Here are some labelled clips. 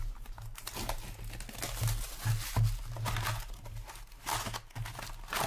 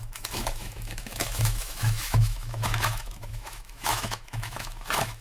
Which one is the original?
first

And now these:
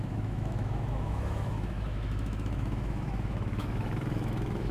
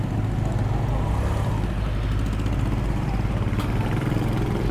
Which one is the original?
second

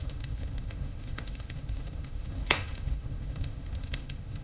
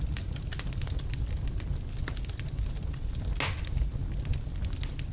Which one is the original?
second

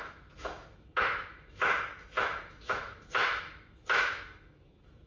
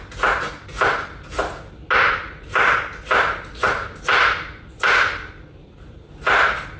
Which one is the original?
second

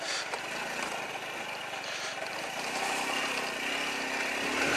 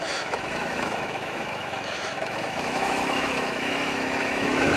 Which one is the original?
first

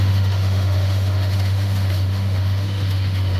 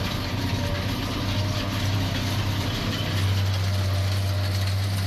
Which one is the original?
second